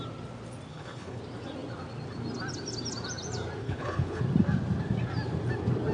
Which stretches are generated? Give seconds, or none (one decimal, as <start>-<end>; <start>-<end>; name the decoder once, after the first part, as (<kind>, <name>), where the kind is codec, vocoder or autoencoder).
0.7-1.2 (codec, HILCodec); 3.6-4.2